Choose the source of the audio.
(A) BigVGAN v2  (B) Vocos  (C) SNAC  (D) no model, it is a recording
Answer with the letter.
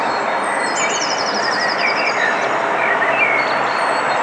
D